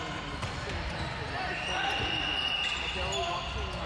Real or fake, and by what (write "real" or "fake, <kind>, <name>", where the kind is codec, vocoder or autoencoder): real